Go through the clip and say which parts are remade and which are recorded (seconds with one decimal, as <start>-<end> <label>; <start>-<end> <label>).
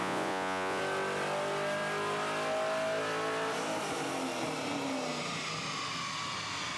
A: 0.0-0.8 remade; 0.8-6.8 recorded